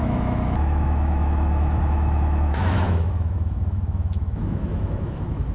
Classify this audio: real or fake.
fake